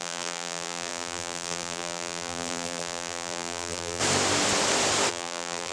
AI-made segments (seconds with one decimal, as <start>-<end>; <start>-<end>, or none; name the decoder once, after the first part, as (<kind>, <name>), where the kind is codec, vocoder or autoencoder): 0.0-4.0 (vocoder, BigVGAN v2); 5.1-5.7